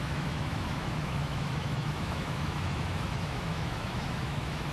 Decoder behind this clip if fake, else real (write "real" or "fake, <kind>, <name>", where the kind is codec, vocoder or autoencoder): fake, autoencoder, DAC-VAE